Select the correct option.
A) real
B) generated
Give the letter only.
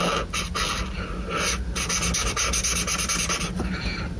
A